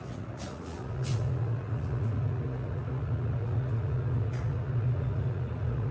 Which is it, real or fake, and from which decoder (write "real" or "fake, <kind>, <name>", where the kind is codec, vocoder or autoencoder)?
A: fake, vocoder, Vocos